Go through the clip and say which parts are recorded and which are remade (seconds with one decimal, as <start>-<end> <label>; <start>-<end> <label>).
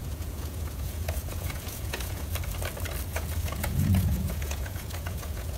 0.0-2.3 remade; 2.3-3.1 recorded; 3.1-5.6 remade